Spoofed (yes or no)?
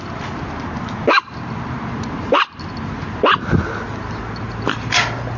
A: no